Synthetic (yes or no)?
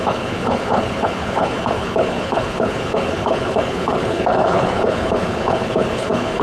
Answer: yes